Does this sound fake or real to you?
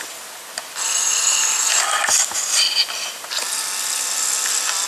real